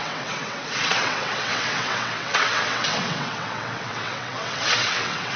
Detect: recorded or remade remade